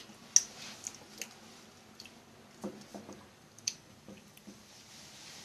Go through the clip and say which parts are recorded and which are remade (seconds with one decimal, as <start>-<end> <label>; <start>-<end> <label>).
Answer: 0.0-2.9 recorded; 2.9-4.6 remade; 4.6-5.4 recorded